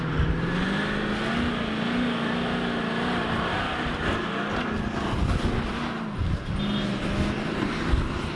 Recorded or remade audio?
recorded